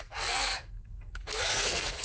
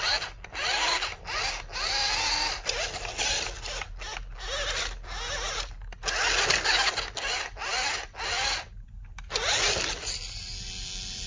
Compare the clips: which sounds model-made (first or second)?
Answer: first